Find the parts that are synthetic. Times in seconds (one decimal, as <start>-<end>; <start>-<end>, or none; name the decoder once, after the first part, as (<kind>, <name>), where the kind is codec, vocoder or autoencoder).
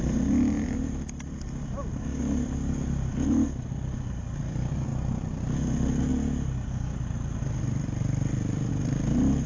none